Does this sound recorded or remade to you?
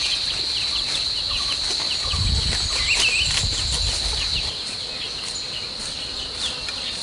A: recorded